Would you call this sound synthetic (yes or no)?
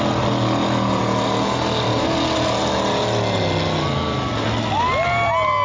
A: no